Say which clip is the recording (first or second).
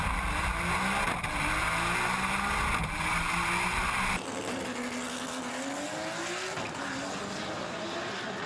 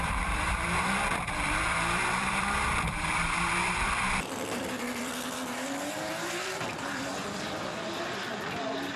first